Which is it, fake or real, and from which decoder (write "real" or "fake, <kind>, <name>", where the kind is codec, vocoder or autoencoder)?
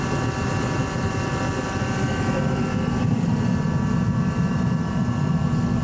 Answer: real